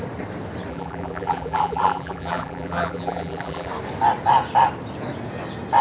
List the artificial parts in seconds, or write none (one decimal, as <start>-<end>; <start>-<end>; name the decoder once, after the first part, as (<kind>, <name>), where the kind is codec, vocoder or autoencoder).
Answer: 0.7-3.7 (vocoder, BigVGAN v2)